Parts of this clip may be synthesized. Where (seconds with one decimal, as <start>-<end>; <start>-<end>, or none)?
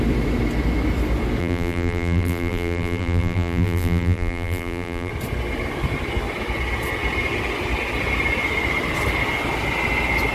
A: 1.4-5.1